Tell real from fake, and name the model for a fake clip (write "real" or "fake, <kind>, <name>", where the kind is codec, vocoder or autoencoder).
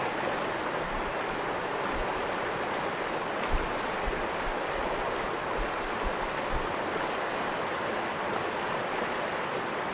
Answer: real